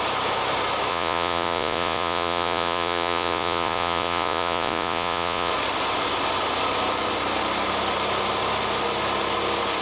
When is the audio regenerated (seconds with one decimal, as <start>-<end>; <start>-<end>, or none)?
0.9-5.5